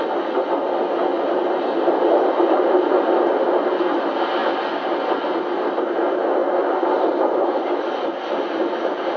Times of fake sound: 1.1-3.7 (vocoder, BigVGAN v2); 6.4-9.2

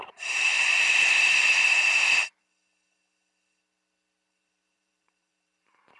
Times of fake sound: 0.0-0.7 (vocoder, BigVGAN v2); 4.3-6.0

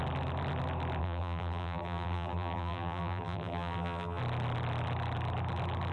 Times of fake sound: 1.0-4.2 (vocoder, BigVGAN v2)

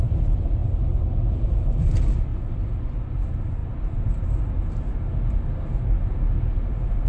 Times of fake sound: 2.3-2.8 (vocoder, BigVGAN v2)

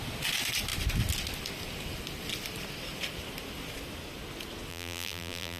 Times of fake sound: 4.7-5.6 (vocoder, BigVGAN v2)

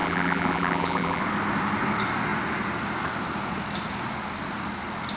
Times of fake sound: 0.0-1.2 (vocoder, BigVGAN v2)

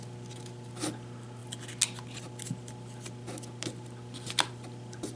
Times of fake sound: none